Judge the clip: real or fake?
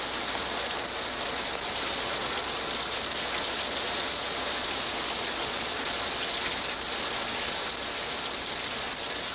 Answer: real